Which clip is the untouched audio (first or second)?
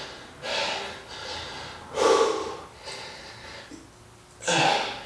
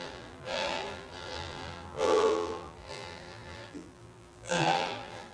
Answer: first